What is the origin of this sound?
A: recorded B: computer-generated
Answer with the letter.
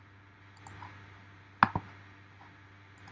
A